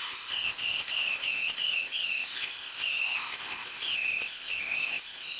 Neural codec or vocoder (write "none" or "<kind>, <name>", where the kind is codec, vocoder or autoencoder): codec, ZipCodec